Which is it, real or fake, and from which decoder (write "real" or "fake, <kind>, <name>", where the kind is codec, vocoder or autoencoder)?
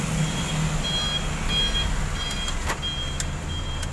real